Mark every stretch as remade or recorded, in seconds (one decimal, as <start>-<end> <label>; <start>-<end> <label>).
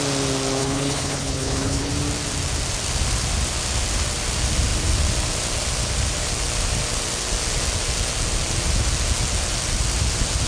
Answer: 0.0-0.6 recorded; 0.6-1.9 remade; 1.9-10.5 recorded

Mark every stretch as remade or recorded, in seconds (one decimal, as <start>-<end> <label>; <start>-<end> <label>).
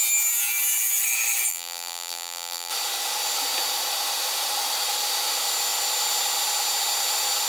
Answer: 0.0-1.5 recorded; 1.5-2.7 remade; 2.7-7.5 recorded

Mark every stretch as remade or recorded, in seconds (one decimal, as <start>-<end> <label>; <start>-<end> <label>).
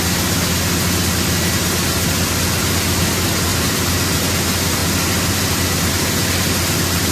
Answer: 0.0-3.5 recorded; 3.5-4.3 remade; 4.3-7.1 recorded